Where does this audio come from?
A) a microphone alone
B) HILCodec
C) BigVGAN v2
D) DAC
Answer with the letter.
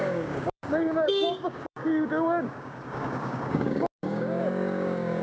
D